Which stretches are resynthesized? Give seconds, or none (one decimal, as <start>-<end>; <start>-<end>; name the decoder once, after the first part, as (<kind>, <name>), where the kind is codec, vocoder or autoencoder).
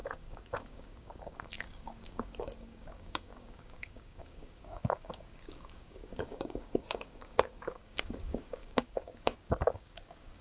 0.0-10.4 (codec, DAC)